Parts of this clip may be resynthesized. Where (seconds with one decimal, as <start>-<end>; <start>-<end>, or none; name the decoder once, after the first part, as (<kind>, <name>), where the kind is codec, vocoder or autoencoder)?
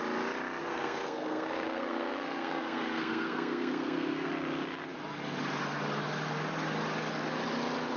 0.6-4.3 (codec, SNAC)